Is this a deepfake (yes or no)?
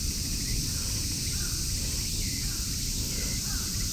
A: yes